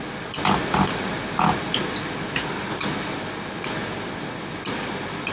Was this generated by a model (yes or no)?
no